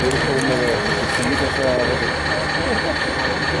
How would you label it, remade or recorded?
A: recorded